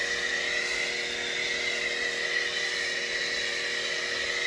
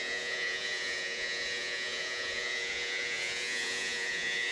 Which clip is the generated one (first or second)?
second